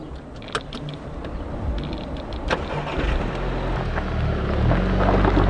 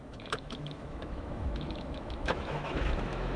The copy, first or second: second